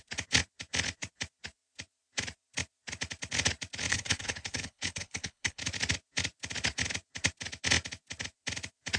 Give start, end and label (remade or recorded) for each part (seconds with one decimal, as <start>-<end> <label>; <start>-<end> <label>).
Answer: 0.0-3.9 recorded; 3.9-5.6 remade; 5.6-9.0 recorded